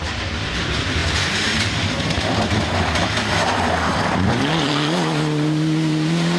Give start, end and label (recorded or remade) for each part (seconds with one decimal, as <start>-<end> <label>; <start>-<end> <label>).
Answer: 0.0-6.4 remade